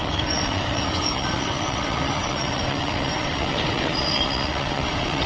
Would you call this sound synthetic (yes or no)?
yes